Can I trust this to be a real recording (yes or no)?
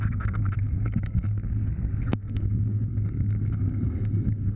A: no